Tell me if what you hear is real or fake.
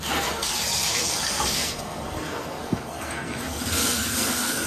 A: fake